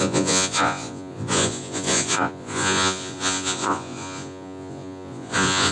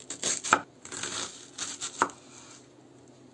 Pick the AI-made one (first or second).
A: first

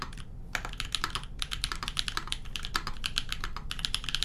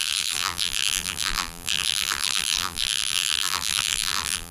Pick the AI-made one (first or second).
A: second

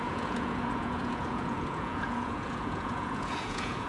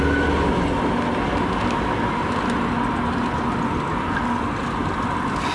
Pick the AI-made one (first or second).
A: first